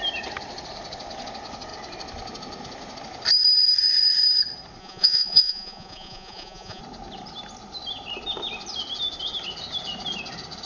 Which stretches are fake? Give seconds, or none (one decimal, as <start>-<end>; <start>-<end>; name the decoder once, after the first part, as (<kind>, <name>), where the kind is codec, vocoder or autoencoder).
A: 4.8-6.8 (vocoder, Vocos)